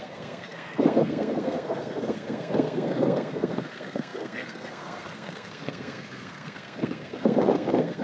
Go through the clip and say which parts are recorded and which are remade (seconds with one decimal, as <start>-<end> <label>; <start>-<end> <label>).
0.0-8.0 remade